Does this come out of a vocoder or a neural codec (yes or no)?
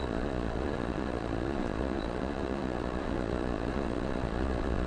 yes